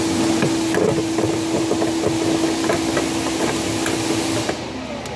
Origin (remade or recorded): recorded